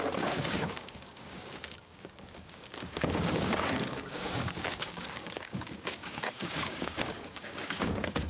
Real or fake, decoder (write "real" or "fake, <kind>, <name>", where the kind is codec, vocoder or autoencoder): fake, codec, DAC